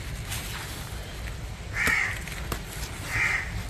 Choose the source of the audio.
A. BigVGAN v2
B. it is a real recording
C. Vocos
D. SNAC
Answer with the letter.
B